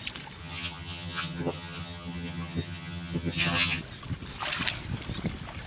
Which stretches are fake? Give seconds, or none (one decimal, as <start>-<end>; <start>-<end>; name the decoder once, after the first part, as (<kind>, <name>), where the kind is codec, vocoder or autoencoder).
0.4-3.8 (vocoder, HiFi-GAN)